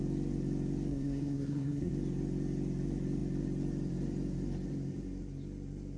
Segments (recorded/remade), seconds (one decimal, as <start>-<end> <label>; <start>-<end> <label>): 0.0-0.9 recorded; 0.9-1.9 remade; 1.9-6.0 recorded